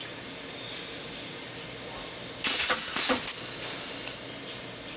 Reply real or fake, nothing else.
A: real